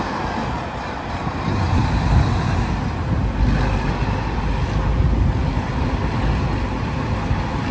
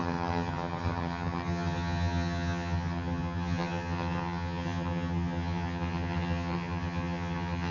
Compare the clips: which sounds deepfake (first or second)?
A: second